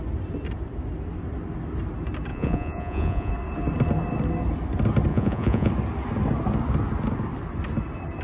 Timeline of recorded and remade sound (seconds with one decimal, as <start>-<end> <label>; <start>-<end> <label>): 0.0-2.3 recorded; 2.3-3.3 remade; 3.3-5.1 recorded; 5.1-5.7 remade; 5.7-8.2 recorded